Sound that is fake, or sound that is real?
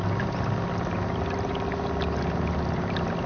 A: real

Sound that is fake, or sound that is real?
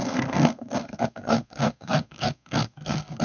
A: fake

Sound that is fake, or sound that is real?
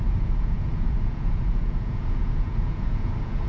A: fake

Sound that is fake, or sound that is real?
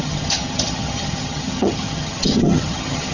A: fake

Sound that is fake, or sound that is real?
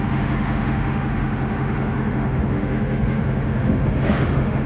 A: fake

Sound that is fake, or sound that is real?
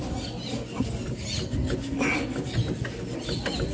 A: real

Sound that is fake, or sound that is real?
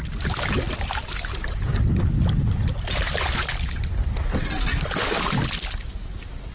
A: real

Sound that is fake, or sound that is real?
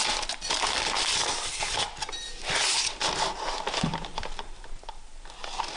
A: real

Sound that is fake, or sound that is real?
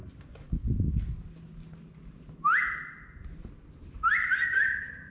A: real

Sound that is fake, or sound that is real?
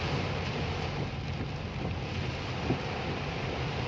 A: real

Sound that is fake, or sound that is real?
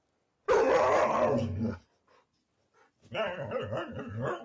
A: real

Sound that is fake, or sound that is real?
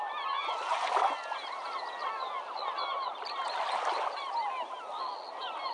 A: real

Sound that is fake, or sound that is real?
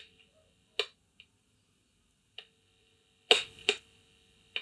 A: real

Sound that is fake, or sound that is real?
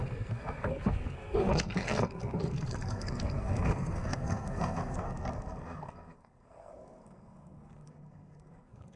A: fake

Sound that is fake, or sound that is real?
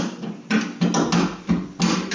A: real